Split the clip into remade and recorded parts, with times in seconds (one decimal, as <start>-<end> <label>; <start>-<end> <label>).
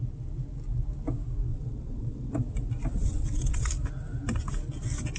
0.0-1.5 recorded; 1.5-2.3 remade; 2.3-3.0 recorded; 3.0-3.7 remade; 3.7-5.2 recorded